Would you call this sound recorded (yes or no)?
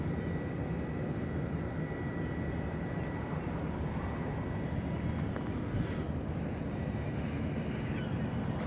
yes